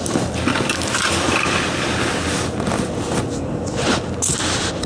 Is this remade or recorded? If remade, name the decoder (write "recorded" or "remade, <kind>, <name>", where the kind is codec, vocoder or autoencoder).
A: recorded